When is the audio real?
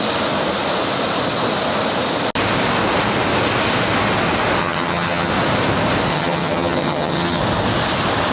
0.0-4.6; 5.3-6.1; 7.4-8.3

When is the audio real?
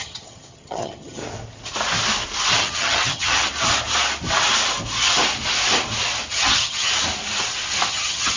1.2-2.6; 3.5-6.3; 6.9-7.9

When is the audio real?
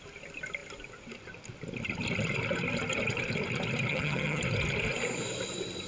0.0-3.9; 4.4-5.9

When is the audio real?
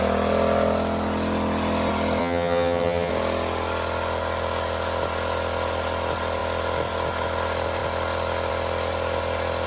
0.0-2.2; 3.1-9.7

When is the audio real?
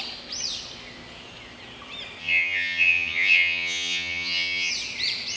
0.0-2.2; 4.7-5.4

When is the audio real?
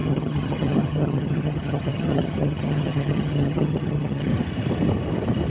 4.3-5.5